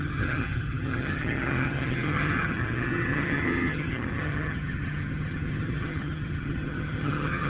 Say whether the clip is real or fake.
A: fake